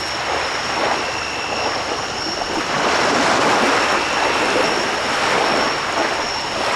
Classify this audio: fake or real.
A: real